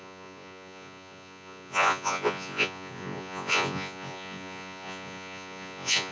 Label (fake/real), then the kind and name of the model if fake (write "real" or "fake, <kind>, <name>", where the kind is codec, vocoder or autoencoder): fake, vocoder, Vocos